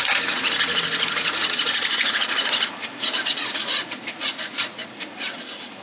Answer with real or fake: fake